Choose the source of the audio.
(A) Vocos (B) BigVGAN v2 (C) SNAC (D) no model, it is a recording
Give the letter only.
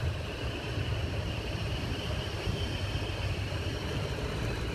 B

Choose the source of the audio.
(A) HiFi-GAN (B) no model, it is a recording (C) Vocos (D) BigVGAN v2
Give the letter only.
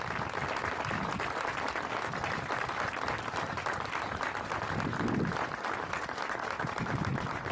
B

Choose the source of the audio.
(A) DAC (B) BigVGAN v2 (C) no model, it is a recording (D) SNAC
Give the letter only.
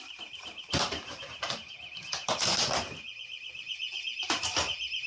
C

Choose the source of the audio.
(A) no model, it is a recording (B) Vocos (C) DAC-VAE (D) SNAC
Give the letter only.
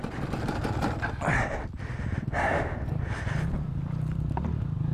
A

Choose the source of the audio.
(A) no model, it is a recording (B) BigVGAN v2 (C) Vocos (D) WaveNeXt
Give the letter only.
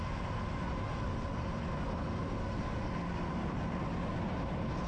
A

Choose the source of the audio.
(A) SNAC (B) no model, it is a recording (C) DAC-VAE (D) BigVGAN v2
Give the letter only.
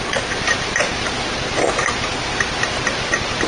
B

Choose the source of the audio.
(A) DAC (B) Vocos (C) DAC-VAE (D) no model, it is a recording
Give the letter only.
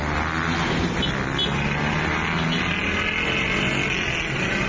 D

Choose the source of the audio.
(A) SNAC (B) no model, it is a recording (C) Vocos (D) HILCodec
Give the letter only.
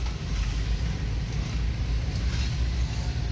B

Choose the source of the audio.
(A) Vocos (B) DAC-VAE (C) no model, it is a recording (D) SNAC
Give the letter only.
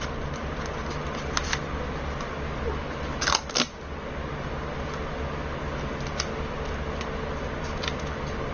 C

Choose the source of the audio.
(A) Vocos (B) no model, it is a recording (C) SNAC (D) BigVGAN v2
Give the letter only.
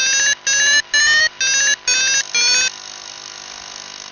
B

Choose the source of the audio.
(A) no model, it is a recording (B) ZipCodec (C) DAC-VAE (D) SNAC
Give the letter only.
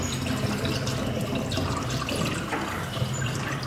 A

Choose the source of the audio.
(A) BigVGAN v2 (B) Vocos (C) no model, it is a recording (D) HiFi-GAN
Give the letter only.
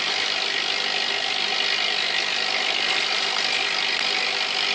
C